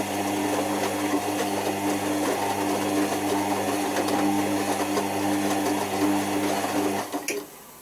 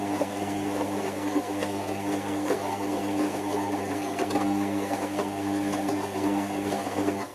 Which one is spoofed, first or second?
second